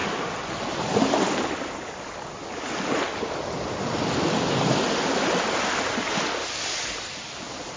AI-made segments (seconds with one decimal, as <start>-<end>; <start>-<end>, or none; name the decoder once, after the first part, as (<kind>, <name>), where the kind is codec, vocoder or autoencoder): none